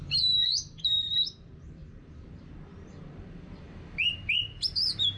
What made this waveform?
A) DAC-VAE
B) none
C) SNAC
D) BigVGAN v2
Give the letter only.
D